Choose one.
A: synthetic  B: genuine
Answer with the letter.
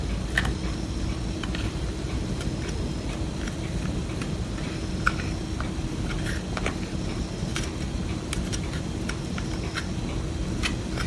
B